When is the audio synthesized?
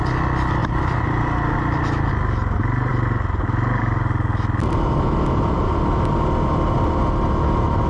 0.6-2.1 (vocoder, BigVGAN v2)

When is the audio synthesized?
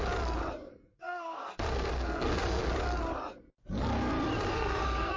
0.7-2.6 (codec, SNAC); 4.5-5.2